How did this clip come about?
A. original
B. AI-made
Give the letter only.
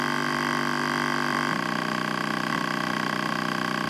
A